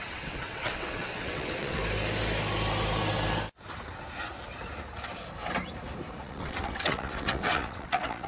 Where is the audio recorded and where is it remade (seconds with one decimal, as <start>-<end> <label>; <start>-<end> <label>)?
0.0-1.8 remade; 1.8-6.1 recorded; 6.1-8.3 remade

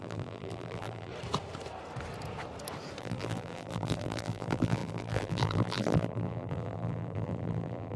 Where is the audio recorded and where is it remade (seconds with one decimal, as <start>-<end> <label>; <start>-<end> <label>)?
0.0-1.1 remade; 1.1-3.0 recorded; 3.0-8.0 remade